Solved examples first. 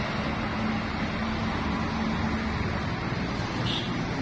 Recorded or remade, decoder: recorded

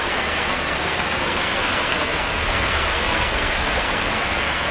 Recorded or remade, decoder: remade, codec, SNAC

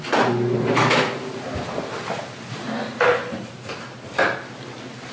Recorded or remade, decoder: recorded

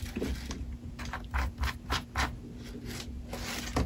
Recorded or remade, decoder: recorded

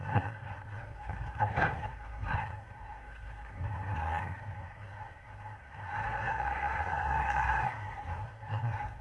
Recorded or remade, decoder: remade, codec, SNAC